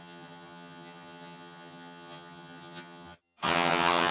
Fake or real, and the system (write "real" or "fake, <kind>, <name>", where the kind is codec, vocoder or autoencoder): fake, vocoder, HiFi-GAN